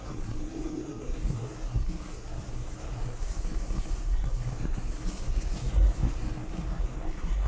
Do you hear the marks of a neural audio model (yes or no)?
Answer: yes